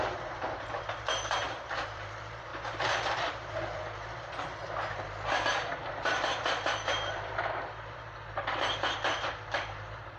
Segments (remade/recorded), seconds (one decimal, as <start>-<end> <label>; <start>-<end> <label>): 0.0-10.2 remade